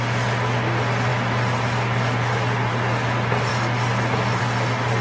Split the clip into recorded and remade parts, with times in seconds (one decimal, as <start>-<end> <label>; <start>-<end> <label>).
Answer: 0.0-5.0 recorded